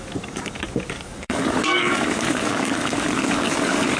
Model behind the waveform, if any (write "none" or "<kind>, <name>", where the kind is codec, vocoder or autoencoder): codec, DAC